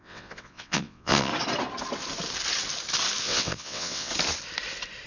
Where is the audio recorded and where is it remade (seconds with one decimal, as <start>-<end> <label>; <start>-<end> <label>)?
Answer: 0.0-1.3 remade; 1.3-3.2 recorded; 3.2-4.1 remade; 4.1-5.1 recorded